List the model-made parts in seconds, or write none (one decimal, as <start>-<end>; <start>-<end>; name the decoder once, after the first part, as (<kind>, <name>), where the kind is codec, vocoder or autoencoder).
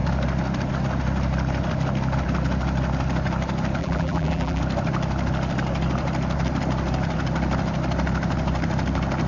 3.8-4.6 (vocoder, BigVGAN v2)